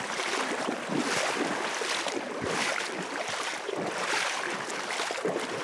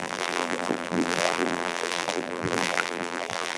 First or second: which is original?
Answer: first